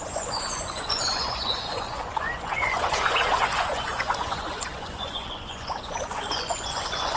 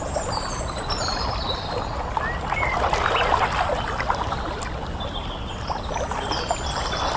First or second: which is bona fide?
second